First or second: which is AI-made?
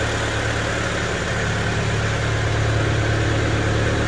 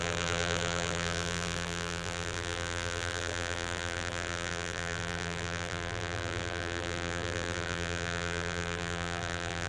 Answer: second